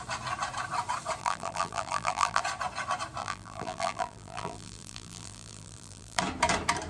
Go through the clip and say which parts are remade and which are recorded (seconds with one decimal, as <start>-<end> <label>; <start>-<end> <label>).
0.0-1.2 recorded; 1.2-2.4 remade; 2.4-3.2 recorded; 3.2-6.2 remade; 6.2-6.9 recorded